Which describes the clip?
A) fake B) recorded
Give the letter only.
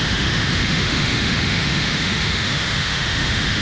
A